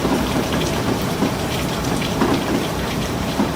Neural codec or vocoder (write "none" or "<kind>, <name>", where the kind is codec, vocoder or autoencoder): vocoder, BigVGAN v2